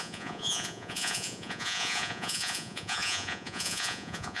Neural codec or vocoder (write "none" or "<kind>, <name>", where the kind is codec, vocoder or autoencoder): vocoder, Vocos